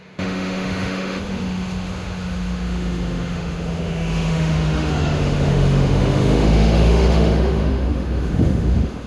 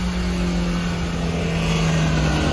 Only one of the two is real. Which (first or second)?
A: second